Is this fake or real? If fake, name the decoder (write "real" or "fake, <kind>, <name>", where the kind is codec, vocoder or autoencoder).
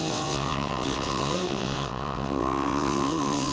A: fake, vocoder, WaveNeXt